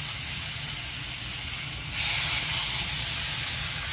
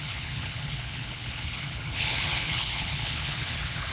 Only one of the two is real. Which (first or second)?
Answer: first